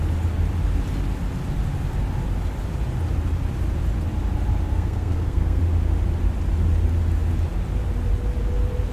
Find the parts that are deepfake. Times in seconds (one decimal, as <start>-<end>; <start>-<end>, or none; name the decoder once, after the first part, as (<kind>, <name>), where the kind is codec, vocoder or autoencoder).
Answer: 4.7-5.6 (codec, SNAC)